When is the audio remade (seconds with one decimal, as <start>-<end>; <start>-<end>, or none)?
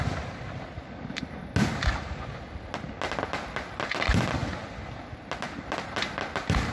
none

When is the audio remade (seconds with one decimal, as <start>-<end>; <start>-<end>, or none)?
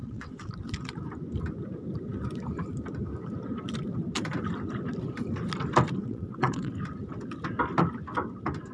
0.0-0.5; 6.0-6.7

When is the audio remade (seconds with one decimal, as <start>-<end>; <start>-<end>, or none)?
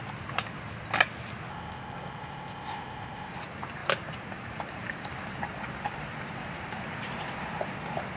1.5-3.3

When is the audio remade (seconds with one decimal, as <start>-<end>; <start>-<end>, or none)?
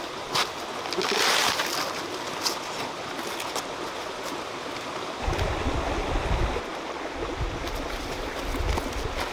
none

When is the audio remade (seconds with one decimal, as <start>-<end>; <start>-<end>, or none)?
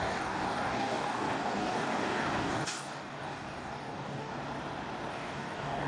0.0-4.3; 5.1-5.9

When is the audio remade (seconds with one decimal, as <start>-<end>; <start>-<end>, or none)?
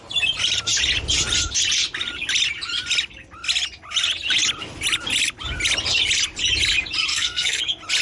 7.1-7.6